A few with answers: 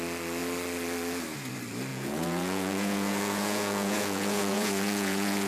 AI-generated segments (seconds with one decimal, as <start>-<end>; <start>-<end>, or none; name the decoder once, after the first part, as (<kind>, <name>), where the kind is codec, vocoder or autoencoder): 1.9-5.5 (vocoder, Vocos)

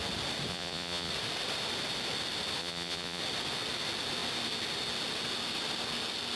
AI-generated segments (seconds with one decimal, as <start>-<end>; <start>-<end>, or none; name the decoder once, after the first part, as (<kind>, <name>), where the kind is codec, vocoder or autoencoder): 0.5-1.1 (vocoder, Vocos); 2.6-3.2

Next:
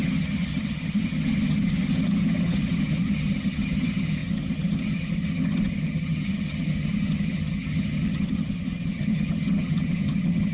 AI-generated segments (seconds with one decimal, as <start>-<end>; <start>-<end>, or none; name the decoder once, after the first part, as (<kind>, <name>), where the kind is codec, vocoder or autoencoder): 0.0-10.5 (vocoder, HiFi-GAN)

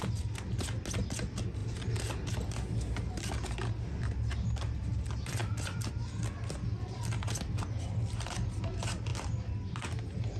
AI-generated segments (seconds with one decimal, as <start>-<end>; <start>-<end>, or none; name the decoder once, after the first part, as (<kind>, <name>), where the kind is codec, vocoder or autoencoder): none

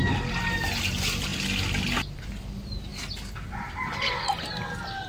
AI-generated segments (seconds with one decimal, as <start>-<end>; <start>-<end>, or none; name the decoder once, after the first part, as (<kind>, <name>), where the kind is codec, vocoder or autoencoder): none

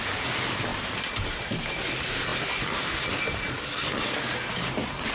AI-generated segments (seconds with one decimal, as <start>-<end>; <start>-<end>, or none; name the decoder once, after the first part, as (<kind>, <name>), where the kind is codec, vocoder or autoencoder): 0.7-1.8 (vocoder, BigVGAN v2)